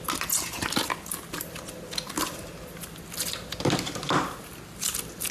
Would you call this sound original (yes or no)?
yes